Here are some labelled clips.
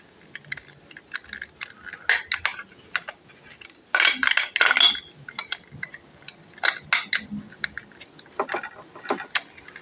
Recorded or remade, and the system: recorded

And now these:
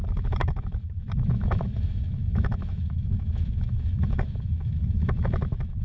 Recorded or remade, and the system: remade, autoencoder, DAC-VAE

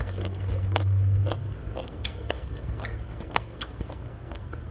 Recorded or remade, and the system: remade, codec, SNAC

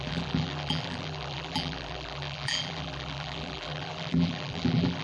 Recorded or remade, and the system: remade, vocoder, BigVGAN v2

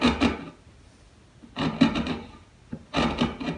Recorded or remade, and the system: recorded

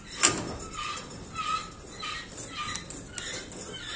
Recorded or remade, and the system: recorded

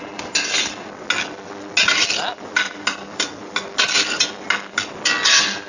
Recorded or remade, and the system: recorded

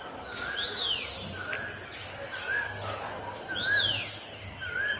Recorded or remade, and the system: recorded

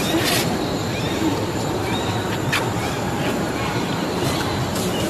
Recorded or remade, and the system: recorded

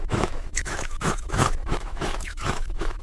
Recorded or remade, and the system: remade, autoencoder, DAC-VAE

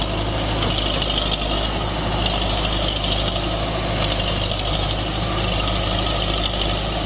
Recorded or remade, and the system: recorded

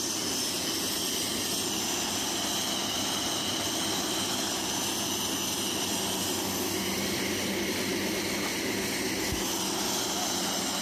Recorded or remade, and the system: recorded